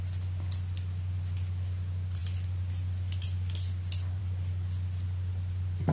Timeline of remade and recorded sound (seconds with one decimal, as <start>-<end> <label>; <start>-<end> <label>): 0.0-5.9 recorded